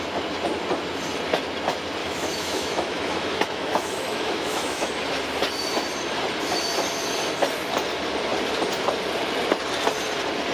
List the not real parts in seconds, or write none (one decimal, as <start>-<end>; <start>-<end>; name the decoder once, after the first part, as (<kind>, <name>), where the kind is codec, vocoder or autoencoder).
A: 2.0-4.9 (autoencoder, DAC-VAE)